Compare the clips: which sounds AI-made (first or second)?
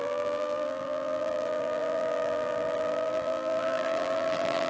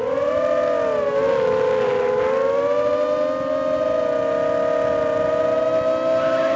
first